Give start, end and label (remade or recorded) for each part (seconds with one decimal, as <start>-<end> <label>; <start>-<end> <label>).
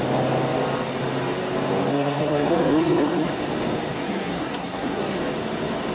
0.0-1.9 recorded; 1.9-3.3 remade; 3.3-3.9 recorded; 3.9-5.2 remade; 5.2-5.9 recorded